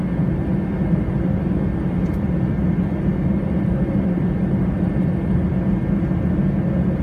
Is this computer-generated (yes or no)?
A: no